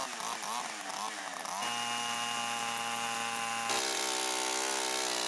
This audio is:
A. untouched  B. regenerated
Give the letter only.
A